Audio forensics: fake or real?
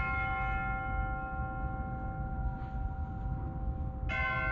real